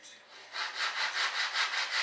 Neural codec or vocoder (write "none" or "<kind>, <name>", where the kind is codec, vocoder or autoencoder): none